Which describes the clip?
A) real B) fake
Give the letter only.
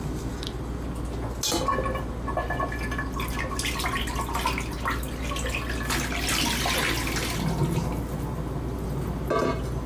A